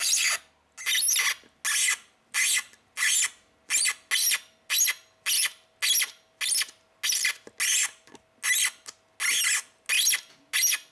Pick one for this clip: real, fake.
real